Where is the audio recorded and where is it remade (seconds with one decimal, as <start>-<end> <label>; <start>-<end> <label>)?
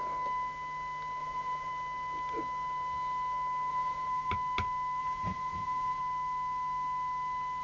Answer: 0.0-1.2 recorded; 1.2-1.7 remade; 1.7-3.7 recorded; 3.7-4.3 remade; 4.3-5.0 recorded; 5.0-6.0 remade; 6.0-7.6 recorded